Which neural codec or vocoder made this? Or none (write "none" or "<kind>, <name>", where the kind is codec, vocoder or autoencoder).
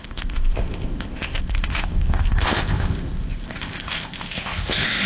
codec, ZipCodec